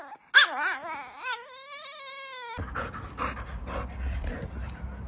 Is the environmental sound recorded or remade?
recorded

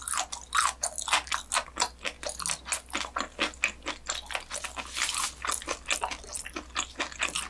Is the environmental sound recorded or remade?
recorded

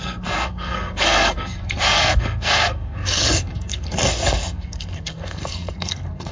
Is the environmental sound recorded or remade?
remade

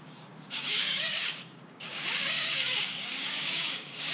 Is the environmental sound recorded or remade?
remade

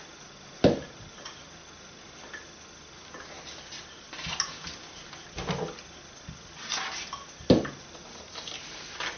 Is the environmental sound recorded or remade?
recorded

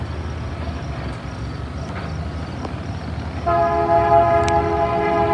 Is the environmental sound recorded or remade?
recorded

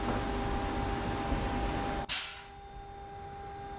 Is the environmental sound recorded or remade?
recorded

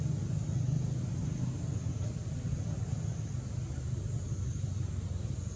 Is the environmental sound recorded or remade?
recorded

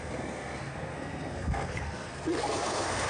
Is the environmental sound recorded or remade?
remade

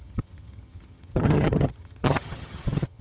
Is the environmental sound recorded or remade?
remade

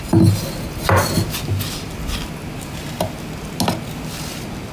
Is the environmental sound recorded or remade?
recorded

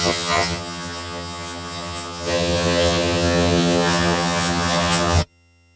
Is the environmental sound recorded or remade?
remade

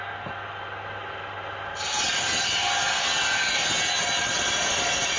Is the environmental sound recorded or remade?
recorded